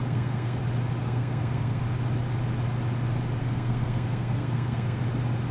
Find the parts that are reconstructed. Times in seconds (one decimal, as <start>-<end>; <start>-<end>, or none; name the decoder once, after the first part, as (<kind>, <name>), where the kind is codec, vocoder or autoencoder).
0.0-0.6 (codec, SNAC); 1.0-1.8; 3.4-5.0